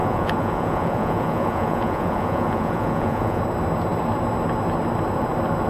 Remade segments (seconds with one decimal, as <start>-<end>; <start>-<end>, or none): 0.0-3.4